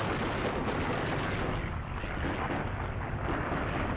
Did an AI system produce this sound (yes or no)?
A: no